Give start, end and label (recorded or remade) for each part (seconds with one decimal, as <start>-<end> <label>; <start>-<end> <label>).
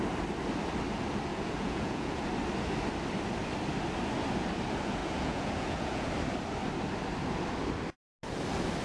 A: 0.0-1.3 recorded; 1.3-2.2 remade; 2.2-5.0 recorded; 5.0-6.1 remade; 6.1-8.8 recorded